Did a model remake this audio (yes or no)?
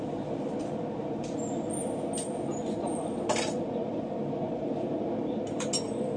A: no